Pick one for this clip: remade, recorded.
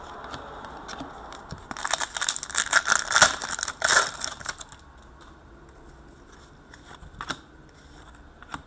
recorded